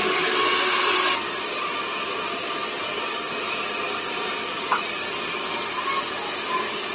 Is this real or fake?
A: real